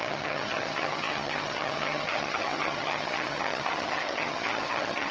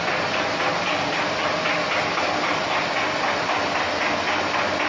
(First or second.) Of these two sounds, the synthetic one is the first